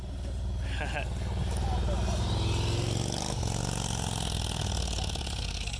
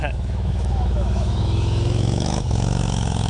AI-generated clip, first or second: second